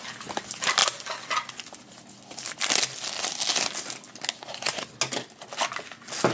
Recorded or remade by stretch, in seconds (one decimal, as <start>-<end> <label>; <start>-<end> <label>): 0.0-6.3 recorded